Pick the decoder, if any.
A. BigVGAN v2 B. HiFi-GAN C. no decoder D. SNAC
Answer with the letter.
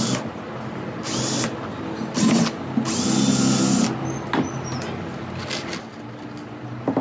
C